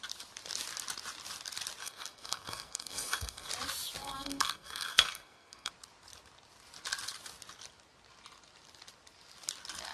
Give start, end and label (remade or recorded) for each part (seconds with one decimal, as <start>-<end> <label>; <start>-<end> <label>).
0.0-1.8 recorded; 1.8-3.5 remade; 3.5-4.0 recorded; 4.0-5.7 remade; 5.7-9.9 recorded